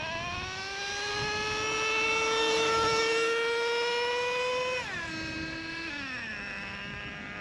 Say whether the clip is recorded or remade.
recorded